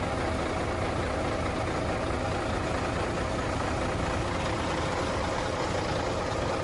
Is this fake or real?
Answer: real